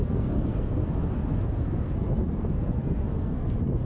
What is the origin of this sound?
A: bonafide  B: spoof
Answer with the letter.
B